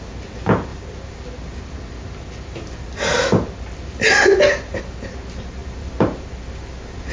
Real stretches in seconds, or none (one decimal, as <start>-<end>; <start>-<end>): 0.0-7.1